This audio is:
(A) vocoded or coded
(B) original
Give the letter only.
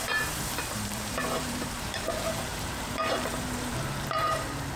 A